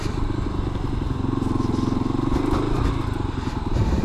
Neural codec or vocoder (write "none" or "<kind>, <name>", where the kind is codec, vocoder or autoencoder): none